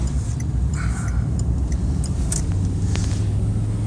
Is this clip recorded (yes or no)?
yes